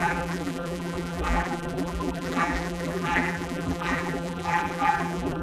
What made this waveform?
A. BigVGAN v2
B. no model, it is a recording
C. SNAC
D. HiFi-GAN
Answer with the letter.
A